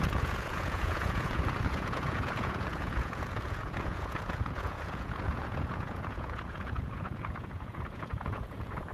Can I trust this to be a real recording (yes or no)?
no